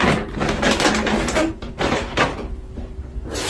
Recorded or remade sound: recorded